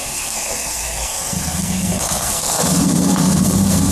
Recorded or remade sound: remade